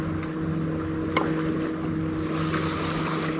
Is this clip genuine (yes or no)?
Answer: yes